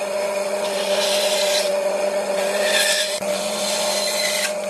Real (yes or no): no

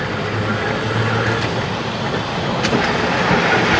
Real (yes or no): yes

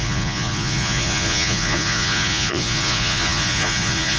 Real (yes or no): no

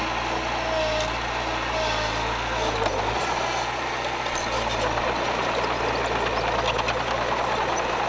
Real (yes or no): yes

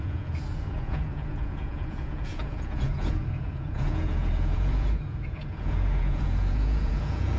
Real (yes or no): no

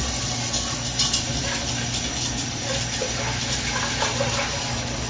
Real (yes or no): yes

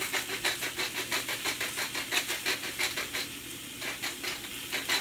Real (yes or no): yes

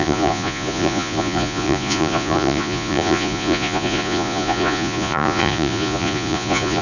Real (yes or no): no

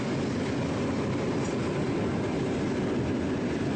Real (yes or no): yes